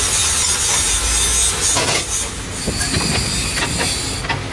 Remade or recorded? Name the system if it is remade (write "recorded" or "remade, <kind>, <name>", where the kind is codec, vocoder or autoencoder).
recorded